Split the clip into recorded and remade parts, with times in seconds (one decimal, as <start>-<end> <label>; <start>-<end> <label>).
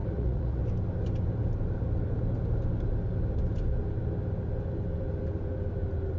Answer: 0.0-0.6 remade; 0.6-6.2 recorded